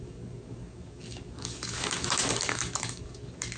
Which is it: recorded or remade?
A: remade